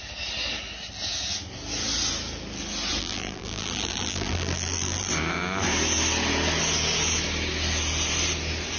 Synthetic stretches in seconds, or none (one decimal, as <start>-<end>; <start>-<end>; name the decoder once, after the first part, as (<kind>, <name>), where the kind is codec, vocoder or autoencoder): 3.0-5.1 (vocoder, BigVGAN v2)